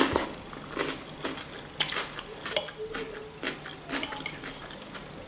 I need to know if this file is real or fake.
real